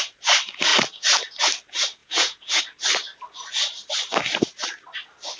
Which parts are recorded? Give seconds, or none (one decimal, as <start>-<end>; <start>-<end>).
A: 0.0-2.0; 2.6-5.4